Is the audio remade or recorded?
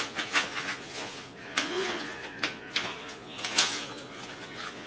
remade